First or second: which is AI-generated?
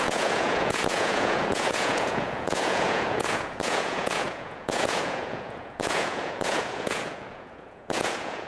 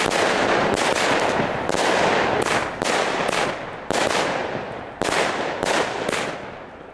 first